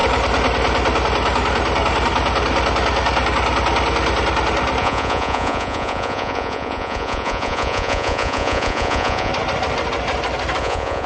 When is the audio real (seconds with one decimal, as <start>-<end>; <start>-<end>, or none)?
0.0-4.8; 9.3-10.6